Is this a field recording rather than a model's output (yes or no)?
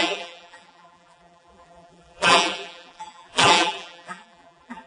no